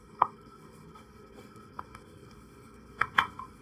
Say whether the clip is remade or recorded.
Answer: remade